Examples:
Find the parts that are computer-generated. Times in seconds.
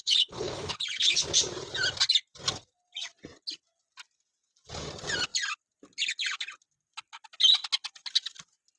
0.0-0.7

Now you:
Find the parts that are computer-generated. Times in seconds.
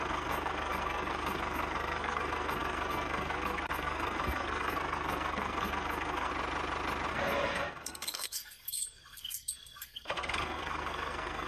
0.0-6.3; 7.1-11.5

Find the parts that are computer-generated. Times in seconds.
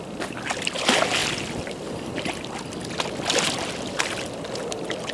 none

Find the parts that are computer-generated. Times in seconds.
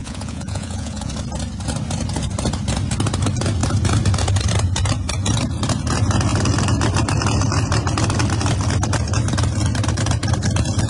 0.0-1.1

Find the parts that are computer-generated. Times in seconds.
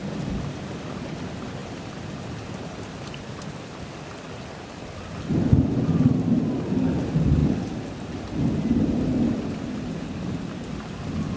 none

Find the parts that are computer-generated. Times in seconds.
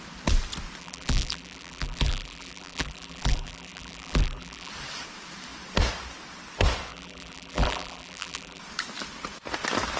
0.8-4.7; 6.9-8.6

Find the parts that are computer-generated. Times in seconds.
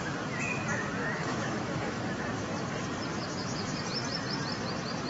1.0-2.0